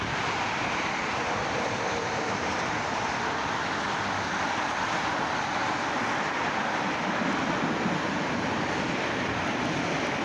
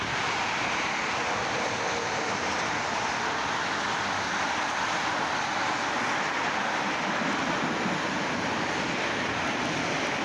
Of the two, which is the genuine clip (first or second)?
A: second